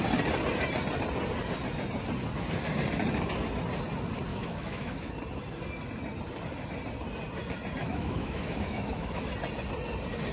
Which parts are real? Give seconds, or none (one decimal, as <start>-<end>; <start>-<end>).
0.0-4.3; 5.1-7.8; 9.3-10.3

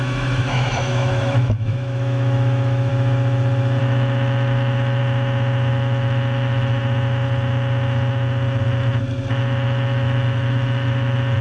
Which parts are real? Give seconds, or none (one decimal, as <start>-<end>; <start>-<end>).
2.9-3.8; 5.0-5.7; 6.8-9.3